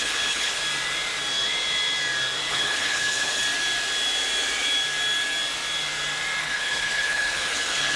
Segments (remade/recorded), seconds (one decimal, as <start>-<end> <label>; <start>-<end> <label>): 0.0-0.6 remade; 0.6-2.5 recorded; 2.5-3.4 remade; 3.4-6.4 recorded; 6.4-8.0 remade